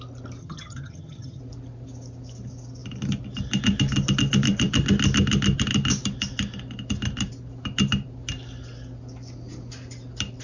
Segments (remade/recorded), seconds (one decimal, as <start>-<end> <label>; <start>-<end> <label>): 0.0-0.4 recorded; 0.4-1.4 remade; 1.4-10.4 recorded